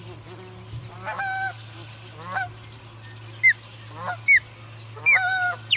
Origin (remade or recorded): recorded